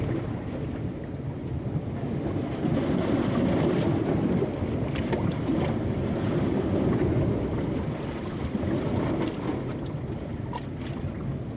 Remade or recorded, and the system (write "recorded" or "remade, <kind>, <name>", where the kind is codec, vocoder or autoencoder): recorded